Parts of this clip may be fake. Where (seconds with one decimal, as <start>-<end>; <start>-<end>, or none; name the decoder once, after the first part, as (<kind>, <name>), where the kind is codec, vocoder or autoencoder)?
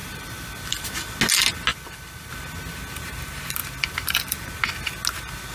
0.0-0.9 (vocoder, BigVGAN v2); 1.7-2.3; 3.6-4.5